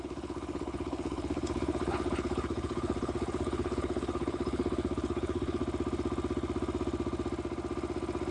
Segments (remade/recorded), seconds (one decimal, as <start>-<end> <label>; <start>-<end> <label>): 0.0-5.6 remade; 5.6-8.3 recorded

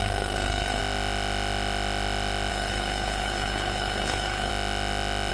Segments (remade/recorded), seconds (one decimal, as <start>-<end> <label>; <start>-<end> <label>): 0.0-0.8 remade; 0.8-2.5 recorded; 2.5-4.5 remade; 4.5-5.3 recorded

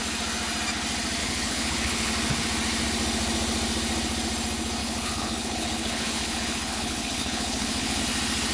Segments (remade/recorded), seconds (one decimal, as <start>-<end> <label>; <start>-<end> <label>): 0.0-1.2 recorded; 1.2-2.1 remade; 2.1-4.8 recorded; 4.8-8.0 remade; 8.0-8.5 recorded

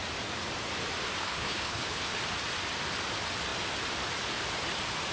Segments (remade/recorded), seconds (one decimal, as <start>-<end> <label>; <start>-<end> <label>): 0.0-1.2 recorded; 1.2-2.2 remade; 2.2-5.1 recorded

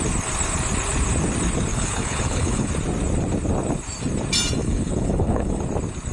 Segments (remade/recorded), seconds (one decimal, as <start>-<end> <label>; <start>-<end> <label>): 0.0-1.7 recorded; 1.7-2.7 remade; 2.7-4.6 recorded; 4.6-5.6 remade; 5.6-6.1 recorded

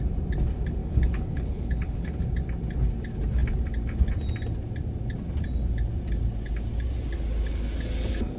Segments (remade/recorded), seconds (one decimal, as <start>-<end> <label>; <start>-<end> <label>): 0.0-0.8 recorded; 0.8-2.2 remade; 2.2-8.4 recorded